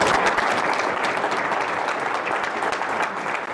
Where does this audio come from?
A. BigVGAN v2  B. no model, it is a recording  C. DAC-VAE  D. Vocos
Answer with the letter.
B